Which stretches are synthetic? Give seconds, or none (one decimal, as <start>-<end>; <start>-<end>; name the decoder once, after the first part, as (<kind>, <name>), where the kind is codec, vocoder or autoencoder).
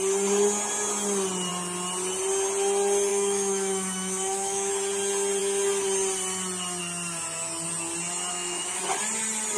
3.1-4.7 (autoencoder, DAC-VAE); 8.3-8.8